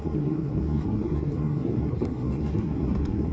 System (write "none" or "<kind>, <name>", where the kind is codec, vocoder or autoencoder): codec, SNAC